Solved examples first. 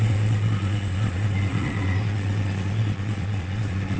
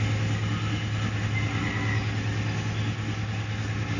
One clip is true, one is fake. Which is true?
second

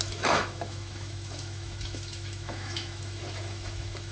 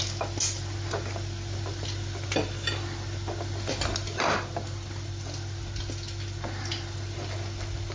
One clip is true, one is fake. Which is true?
second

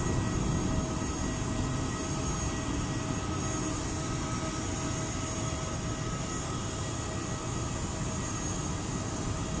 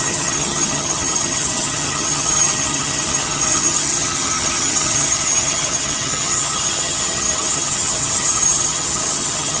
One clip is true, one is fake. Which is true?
first